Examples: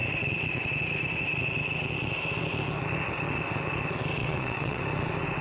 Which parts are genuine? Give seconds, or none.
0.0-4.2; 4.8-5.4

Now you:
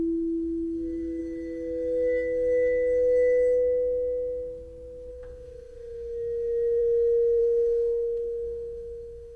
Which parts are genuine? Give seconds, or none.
1.2-5.1; 6.8-7.4

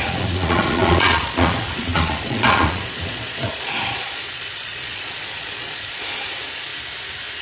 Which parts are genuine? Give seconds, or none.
6.7-7.4

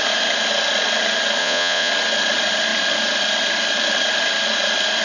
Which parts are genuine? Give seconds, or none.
0.0-1.4; 1.9-5.0